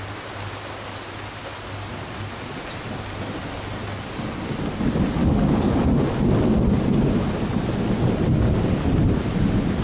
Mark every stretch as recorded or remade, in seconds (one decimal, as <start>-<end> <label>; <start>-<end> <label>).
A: 0.0-5.2 recorded; 5.2-5.9 remade; 5.9-9.8 recorded